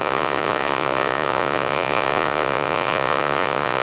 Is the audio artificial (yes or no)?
yes